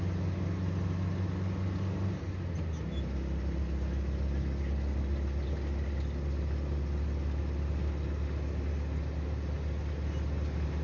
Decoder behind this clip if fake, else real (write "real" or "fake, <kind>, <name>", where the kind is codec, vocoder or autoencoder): real